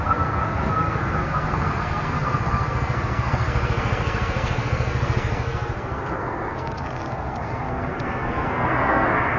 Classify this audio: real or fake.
fake